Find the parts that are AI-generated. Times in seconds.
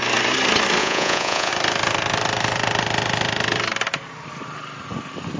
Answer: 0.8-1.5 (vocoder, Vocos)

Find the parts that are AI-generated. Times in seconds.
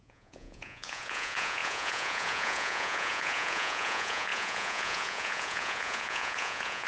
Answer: 0.0-6.9 (vocoder, Vocos)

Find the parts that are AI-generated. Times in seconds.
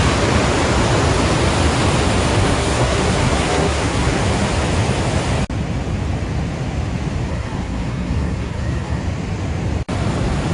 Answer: 2.4-4.2 (codec, SNAC); 7.3-9.0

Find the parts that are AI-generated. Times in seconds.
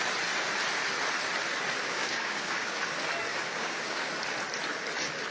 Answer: 1.8-2.8 (codec, DAC); 3.3-4.1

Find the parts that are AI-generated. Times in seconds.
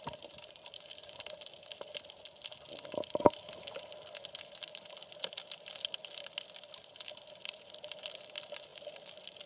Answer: none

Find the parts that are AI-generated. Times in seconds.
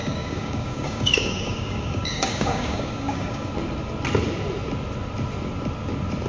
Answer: 0.0-3.5 (codec, DAC)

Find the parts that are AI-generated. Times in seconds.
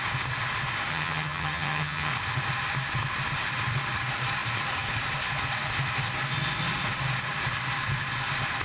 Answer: 0.9-2.1 (vocoder, HiFi-GAN)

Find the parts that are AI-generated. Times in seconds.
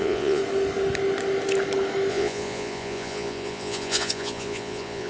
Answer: 0.0-0.4 (vocoder, Vocos); 2.1-5.1